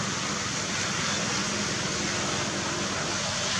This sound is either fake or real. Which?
real